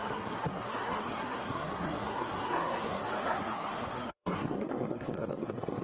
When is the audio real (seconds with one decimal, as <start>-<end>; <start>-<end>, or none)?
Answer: none